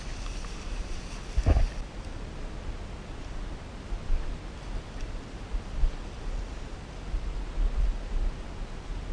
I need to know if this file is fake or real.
real